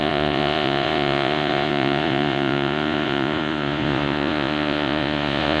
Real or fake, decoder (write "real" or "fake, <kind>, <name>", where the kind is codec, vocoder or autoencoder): fake, vocoder, Vocos